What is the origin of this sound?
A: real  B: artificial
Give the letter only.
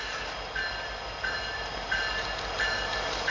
A